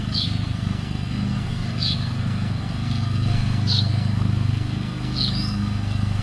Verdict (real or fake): fake